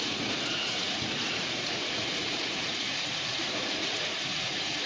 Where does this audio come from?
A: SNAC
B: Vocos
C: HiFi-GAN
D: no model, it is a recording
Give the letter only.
B